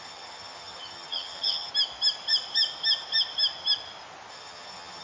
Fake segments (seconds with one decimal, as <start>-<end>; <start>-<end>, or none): 0.0-1.7; 4.3-5.0